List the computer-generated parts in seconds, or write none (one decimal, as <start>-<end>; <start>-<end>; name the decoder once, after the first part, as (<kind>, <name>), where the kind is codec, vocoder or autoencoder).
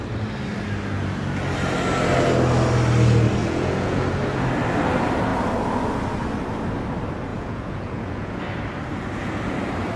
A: 3.4-4.0 (vocoder, Vocos); 7.3-8.4